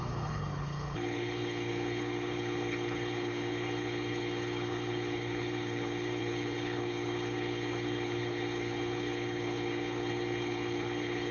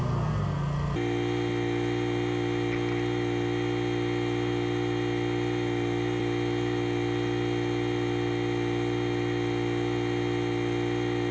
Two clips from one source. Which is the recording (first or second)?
second